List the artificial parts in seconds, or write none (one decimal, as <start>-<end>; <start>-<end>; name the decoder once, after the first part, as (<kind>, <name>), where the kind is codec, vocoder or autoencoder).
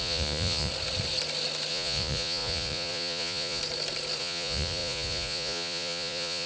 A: 0.0-0.7 (vocoder, Vocos); 1.7-3.6; 4.2-6.5